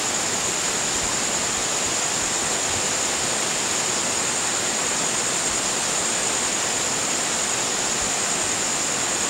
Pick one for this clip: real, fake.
real